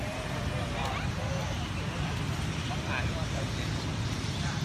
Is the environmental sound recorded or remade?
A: recorded